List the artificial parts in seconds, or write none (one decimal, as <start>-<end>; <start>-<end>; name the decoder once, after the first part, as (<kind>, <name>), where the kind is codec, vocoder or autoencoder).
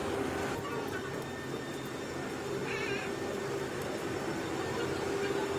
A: none